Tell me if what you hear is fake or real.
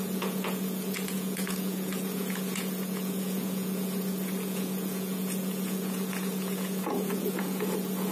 fake